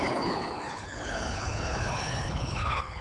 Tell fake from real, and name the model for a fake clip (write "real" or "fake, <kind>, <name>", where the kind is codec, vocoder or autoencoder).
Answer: fake, codec, HILCodec